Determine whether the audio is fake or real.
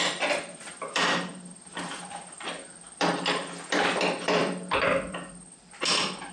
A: fake